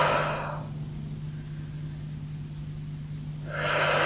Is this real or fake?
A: real